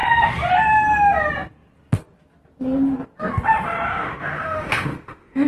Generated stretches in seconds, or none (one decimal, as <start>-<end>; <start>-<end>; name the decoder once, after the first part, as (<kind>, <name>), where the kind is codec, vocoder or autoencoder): 3.9-5.5 (autoencoder, DAC-VAE)